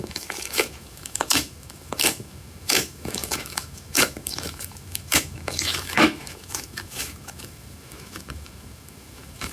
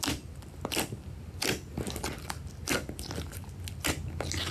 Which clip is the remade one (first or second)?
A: first